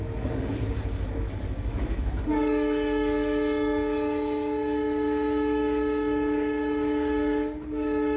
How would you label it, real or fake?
fake